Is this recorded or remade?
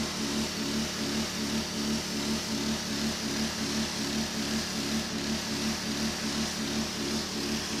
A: recorded